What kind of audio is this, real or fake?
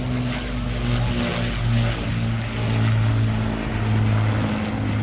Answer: real